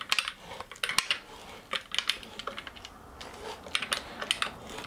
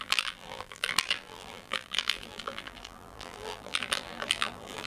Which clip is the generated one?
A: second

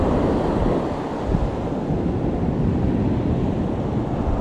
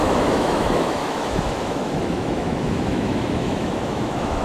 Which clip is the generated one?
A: second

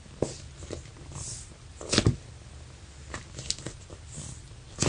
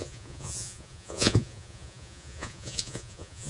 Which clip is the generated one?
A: second